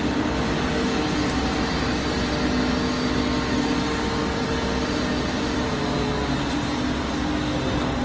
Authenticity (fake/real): real